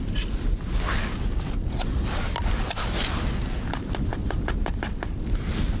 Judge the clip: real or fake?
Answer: real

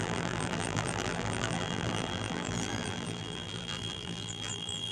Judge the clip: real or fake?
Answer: fake